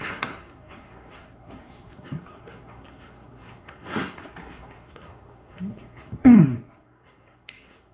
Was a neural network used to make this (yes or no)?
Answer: yes